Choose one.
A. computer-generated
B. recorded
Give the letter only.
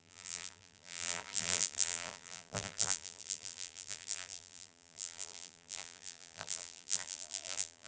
A